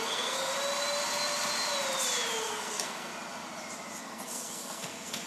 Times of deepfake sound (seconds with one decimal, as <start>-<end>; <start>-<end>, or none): 0.0-0.5; 2.4-3.1; 4.0-5.3